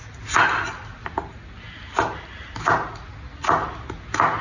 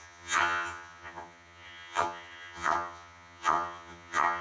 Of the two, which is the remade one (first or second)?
second